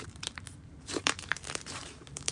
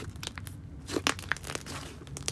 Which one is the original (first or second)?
second